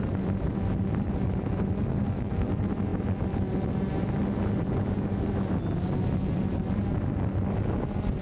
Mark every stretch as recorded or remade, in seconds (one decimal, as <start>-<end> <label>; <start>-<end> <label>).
0.0-1.9 recorded; 1.9-2.5 remade; 2.5-8.2 recorded